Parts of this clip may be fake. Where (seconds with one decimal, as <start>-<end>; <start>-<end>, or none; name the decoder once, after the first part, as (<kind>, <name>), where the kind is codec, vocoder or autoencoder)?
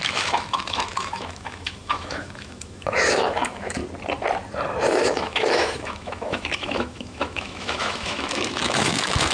0.0-3.8 (autoencoder, DAC-VAE); 4.9-9.3